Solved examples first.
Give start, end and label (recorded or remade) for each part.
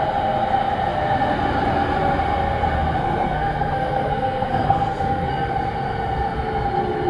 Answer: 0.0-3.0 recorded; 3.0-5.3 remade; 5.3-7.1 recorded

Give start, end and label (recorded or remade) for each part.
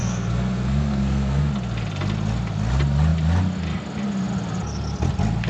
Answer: 0.0-1.5 remade; 1.5-5.5 recorded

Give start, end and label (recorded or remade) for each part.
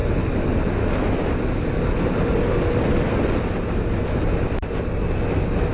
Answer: 0.0-5.7 recorded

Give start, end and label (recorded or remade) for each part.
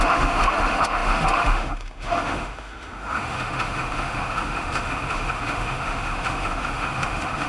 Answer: 0.0-7.5 remade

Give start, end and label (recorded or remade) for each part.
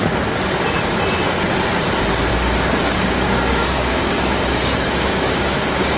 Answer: 0.0-2.3 recorded; 2.3-6.0 remade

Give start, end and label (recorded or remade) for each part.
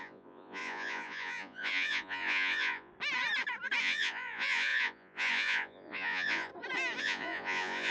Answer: 0.0-2.9 remade; 2.9-3.8 recorded; 3.8-6.5 remade; 6.5-7.0 recorded; 7.0-7.9 remade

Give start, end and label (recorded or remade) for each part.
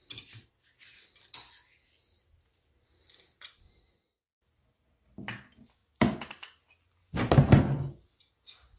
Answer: 0.0-8.8 recorded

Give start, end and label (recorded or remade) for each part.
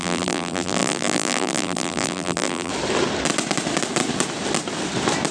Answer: 0.0-2.7 remade; 2.7-5.3 recorded